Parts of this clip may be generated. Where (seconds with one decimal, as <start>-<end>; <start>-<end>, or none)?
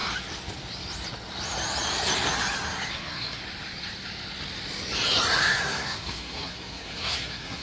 2.9-3.4; 5.4-7.6